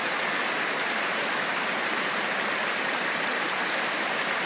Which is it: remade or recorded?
remade